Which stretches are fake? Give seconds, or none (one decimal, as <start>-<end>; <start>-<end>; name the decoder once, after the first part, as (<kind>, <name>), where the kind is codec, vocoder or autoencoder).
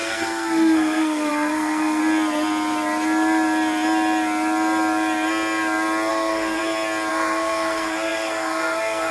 0.0-2.0 (codec, SNAC); 6.1-6.6; 7.1-9.1